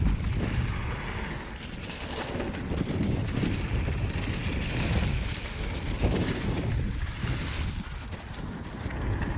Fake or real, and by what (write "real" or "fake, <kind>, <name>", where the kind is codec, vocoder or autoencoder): real